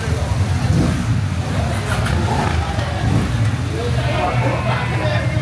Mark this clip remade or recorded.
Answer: recorded